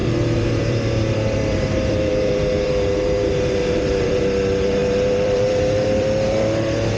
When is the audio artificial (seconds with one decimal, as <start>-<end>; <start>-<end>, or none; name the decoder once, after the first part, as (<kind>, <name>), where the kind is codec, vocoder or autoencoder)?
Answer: 0.0-4.2 (vocoder, BigVGAN v2); 4.8-7.0